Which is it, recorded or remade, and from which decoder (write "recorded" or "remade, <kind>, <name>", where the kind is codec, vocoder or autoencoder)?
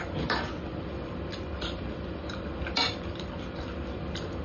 recorded